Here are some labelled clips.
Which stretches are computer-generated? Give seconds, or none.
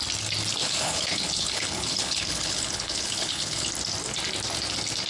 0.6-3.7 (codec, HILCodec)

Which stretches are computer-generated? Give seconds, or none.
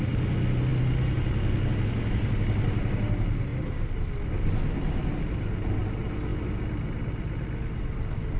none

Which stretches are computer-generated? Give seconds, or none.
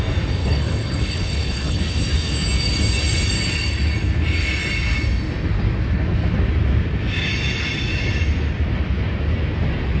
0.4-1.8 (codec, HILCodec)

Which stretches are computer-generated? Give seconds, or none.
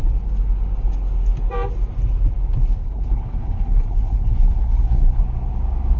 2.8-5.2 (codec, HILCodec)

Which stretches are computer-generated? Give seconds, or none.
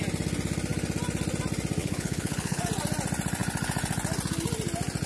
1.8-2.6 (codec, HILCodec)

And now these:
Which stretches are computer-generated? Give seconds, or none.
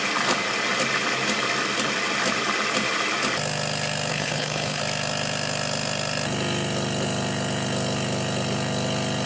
4.1-4.8 (codec, HILCodec)